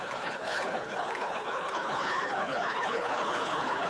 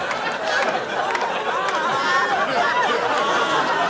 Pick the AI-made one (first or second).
first